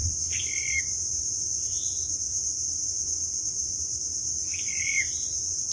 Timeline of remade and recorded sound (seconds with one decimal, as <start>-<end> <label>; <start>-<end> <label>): 0.0-5.7 recorded